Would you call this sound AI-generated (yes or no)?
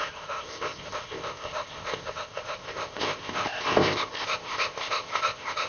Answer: yes